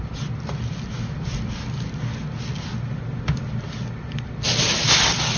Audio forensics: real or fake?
real